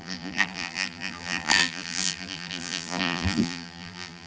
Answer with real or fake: fake